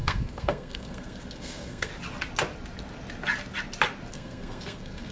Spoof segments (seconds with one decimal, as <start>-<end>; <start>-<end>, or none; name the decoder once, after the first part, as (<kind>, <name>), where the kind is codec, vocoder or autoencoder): 0.0-1.9 (codec, SNAC); 4.1-5.1